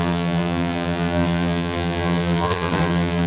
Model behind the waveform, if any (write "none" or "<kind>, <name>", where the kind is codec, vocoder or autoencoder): vocoder, BigVGAN v2